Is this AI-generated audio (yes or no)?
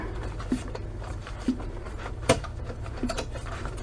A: yes